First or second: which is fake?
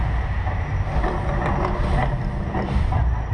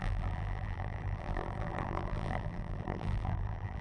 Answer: second